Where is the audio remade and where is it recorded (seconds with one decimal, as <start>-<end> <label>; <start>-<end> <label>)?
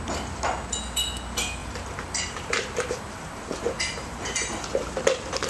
0.0-1.6 recorded; 1.6-4.9 remade; 4.9-5.5 recorded